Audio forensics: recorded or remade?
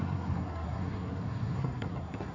remade